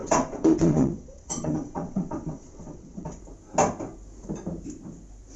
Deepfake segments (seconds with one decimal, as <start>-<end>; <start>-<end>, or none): 0.0-3.2